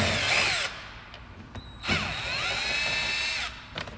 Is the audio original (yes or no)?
yes